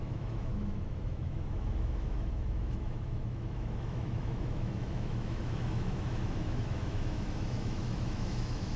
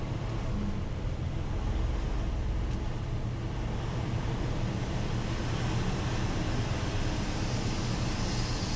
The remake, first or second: first